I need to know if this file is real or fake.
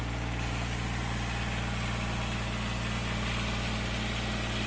real